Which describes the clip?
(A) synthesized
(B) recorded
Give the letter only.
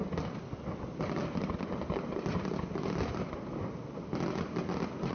B